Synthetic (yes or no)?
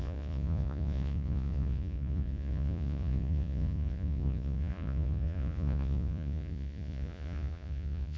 yes